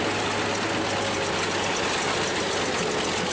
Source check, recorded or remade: recorded